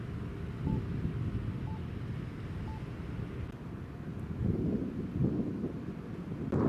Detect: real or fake real